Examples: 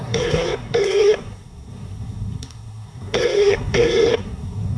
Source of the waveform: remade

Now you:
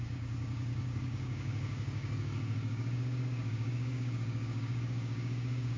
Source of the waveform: remade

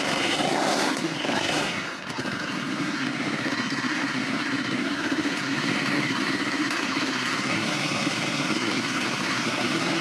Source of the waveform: remade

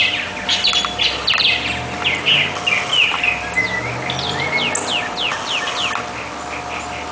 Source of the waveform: recorded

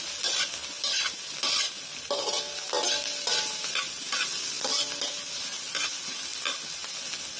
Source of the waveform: recorded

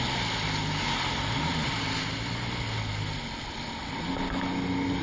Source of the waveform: recorded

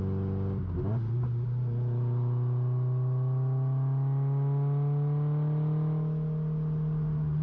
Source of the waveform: recorded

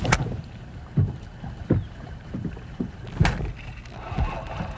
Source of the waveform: recorded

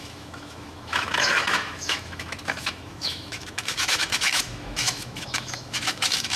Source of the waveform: remade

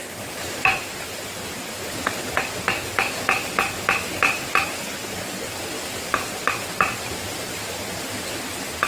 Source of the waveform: recorded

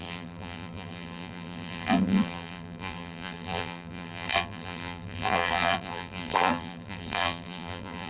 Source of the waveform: remade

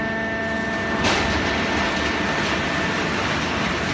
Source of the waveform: recorded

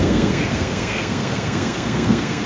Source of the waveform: remade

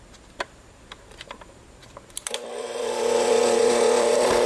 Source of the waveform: remade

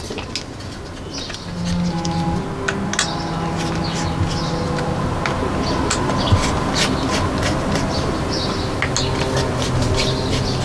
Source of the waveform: recorded